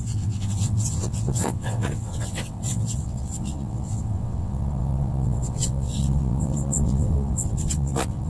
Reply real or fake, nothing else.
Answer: fake